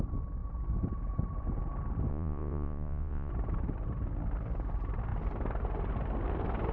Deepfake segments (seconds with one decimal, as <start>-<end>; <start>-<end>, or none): 2.1-3.3

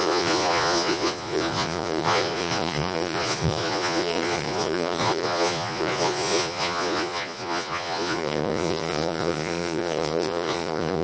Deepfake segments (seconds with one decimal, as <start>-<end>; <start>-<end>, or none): 0.0-11.0

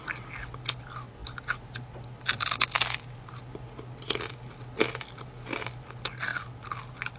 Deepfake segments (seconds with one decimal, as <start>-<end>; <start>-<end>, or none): none